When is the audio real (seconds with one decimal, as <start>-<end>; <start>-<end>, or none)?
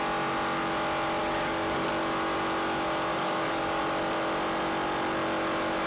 0.0-1.2; 1.9-3.1; 3.8-5.9